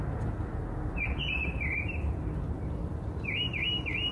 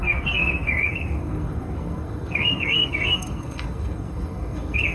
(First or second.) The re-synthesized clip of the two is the second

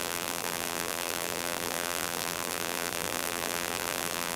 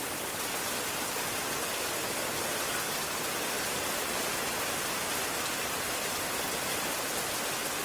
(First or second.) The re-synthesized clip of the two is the first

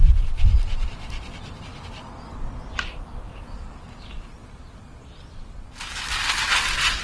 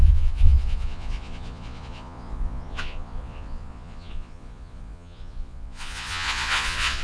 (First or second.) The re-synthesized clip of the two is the second